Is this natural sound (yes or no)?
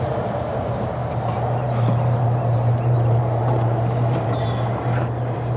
no